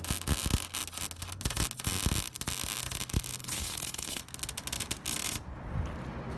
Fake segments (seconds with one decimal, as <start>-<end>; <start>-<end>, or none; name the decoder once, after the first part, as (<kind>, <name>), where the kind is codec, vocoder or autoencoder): 3.4-4.2 (codec, HILCodec)